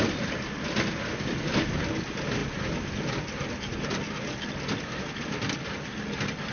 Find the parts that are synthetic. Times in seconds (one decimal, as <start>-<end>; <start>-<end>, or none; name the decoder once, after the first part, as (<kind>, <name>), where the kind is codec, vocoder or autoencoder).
none